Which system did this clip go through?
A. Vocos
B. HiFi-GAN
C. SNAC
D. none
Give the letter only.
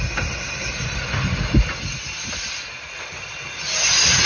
D